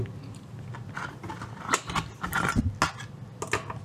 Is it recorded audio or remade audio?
recorded